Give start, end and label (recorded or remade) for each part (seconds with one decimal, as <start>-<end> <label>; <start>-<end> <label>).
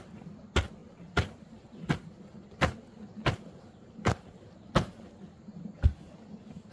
0.0-6.7 recorded